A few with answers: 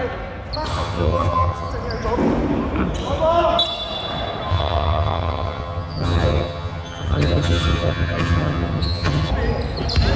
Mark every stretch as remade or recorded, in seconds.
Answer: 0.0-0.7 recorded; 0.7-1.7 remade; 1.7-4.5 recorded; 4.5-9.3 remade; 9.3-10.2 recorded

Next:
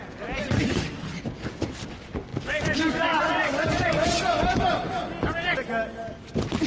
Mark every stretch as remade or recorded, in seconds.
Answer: 0.0-6.7 recorded

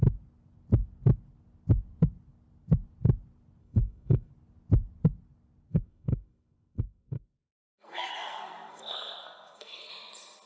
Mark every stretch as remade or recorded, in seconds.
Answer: 0.0-3.6 recorded; 3.6-4.3 remade; 4.3-5.7 recorded; 5.7-9.9 remade; 9.9-10.5 recorded

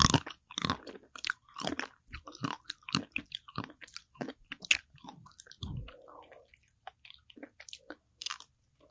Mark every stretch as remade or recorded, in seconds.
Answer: 0.0-8.9 recorded

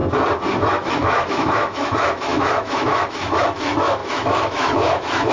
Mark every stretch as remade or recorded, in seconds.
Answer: 0.0-0.7 recorded; 0.7-5.3 remade

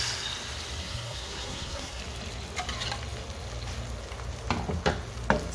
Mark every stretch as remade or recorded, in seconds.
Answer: 0.0-0.8 recorded; 0.8-2.0 remade; 2.0-5.5 recorded

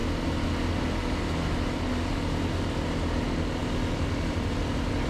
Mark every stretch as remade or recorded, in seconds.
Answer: 0.0-5.1 recorded